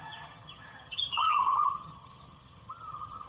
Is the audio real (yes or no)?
no